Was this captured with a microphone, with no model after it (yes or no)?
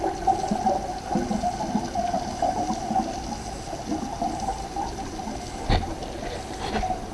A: yes